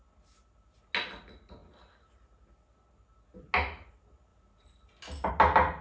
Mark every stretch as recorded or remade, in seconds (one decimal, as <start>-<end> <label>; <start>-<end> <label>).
0.0-5.8 recorded